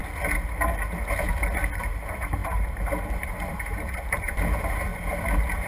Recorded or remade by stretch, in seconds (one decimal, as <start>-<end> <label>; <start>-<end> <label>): 0.0-1.8 recorded; 1.8-4.9 remade; 4.9-5.7 recorded